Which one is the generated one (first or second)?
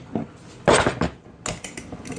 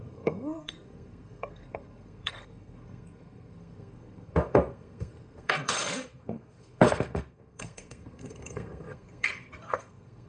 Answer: second